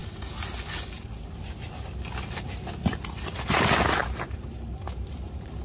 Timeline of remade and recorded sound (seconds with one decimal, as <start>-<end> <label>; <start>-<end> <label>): 0.0-4.0 recorded; 4.0-5.6 remade